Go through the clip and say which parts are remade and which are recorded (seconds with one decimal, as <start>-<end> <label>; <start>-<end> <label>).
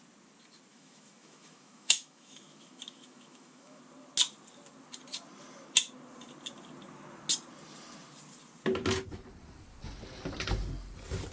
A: 0.0-0.7 recorded; 0.7-3.8 remade; 3.8-11.3 recorded